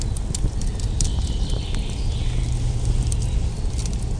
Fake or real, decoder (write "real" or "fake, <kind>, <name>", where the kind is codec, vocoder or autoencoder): real